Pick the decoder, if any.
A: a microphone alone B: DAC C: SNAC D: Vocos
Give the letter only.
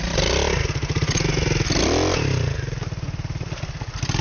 A